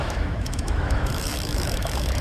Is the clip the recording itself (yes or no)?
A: no